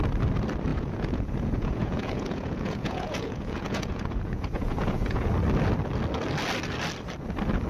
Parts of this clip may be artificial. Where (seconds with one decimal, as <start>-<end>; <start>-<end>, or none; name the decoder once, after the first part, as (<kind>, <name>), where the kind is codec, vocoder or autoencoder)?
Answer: 0.7-5.3 (vocoder, Vocos)

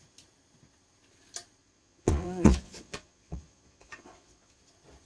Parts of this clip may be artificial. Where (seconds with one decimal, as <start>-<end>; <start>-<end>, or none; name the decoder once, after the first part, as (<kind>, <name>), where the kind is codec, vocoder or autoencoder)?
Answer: 1.6-4.6 (vocoder, Vocos)

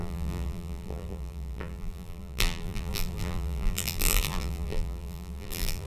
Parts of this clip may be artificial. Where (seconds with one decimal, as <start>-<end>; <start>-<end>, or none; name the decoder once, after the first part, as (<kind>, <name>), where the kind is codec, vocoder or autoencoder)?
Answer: 0.0-5.9 (vocoder, BigVGAN v2)

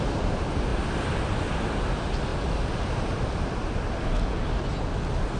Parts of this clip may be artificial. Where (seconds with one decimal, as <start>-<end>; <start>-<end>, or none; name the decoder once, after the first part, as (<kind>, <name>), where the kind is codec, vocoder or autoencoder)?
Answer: none

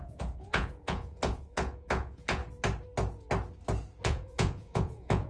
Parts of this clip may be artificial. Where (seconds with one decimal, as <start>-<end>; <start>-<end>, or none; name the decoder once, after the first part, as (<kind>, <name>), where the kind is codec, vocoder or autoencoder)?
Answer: 0.0-2.4 (vocoder, Vocos); 4.0-5.3